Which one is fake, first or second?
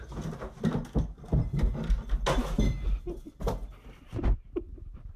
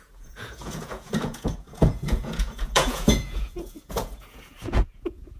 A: second